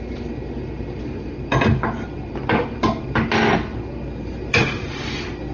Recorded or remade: recorded